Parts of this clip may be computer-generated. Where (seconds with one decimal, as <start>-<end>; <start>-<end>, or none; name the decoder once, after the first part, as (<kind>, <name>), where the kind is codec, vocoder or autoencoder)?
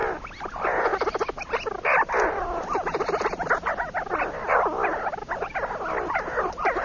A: none